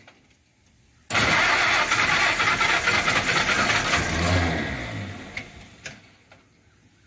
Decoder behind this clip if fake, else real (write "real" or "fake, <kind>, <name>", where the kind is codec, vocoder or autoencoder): real